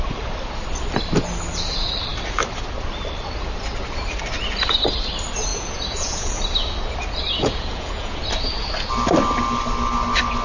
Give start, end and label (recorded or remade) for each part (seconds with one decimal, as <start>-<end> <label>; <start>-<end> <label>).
0.0-5.5 recorded; 5.5-6.4 remade; 6.4-7.4 recorded; 7.4-8.2 remade; 8.2-10.4 recorded